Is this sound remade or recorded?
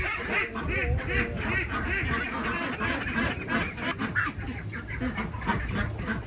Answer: recorded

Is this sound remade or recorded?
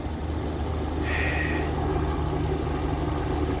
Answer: recorded